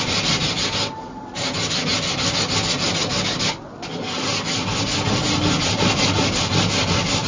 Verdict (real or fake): real